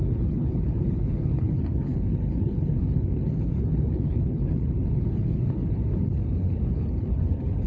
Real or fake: fake